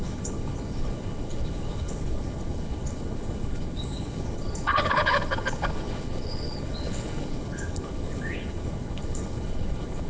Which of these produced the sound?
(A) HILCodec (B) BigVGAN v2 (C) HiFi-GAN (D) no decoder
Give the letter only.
A